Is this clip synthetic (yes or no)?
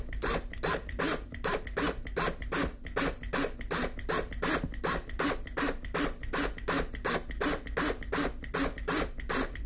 no